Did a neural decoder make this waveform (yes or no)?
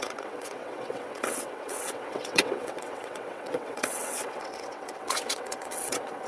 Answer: yes